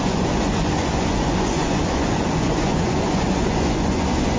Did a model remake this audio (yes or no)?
yes